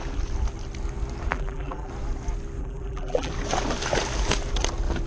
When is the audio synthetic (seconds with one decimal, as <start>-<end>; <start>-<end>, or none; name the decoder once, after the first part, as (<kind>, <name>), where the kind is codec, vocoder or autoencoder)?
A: 1.3-1.9 (vocoder, BigVGAN v2); 2.6-3.3